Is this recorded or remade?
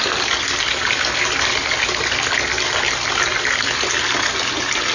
recorded